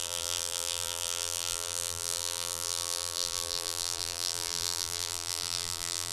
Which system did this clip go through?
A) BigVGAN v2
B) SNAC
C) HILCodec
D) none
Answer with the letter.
A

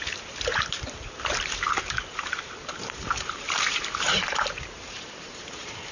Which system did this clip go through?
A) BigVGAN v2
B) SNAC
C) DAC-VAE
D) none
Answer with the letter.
A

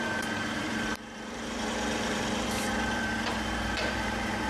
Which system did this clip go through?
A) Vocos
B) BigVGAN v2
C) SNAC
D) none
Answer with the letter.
B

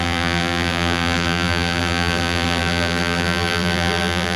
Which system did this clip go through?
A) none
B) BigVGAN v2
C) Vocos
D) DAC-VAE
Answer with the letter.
B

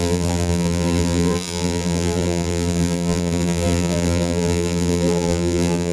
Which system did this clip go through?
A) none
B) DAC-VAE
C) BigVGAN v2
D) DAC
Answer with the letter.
C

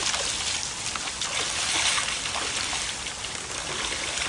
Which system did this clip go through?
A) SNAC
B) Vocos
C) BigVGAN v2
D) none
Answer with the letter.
D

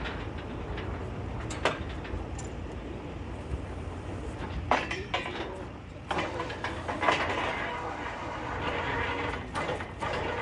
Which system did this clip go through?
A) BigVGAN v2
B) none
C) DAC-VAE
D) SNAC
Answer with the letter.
A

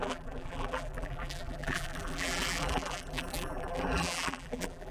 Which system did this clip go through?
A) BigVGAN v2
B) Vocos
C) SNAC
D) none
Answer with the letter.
A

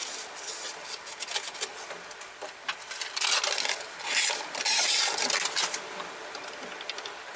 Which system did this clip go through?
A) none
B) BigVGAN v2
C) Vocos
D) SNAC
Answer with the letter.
A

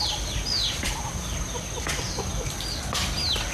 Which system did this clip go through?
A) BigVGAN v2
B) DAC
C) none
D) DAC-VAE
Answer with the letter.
A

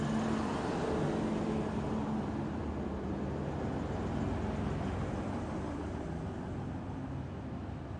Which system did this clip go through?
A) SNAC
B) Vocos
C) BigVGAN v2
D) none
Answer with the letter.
D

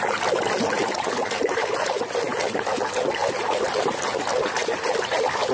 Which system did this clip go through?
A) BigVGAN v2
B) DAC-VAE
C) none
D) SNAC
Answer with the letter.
C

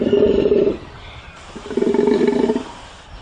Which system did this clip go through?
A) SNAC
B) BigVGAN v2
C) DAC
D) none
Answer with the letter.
B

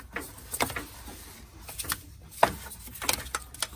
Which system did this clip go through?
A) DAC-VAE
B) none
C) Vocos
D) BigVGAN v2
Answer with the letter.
B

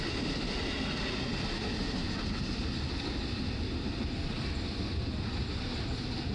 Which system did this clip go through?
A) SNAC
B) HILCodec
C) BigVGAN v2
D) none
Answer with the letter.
D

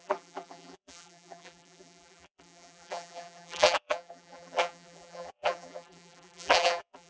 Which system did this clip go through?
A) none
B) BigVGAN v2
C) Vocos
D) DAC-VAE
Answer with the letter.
B